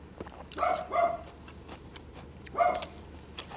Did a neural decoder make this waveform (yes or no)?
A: yes